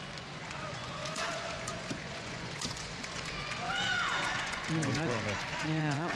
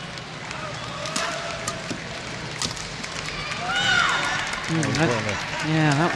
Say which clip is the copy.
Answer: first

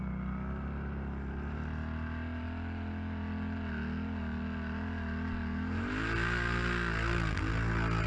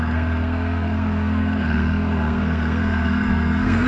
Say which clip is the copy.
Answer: second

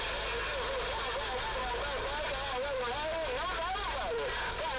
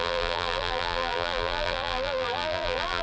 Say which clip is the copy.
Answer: second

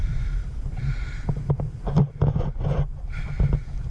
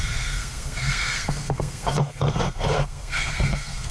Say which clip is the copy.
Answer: second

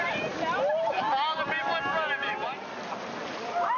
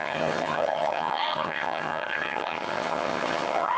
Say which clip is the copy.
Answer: second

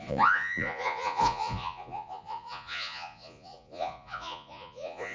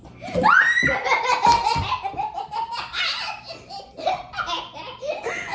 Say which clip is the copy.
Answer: first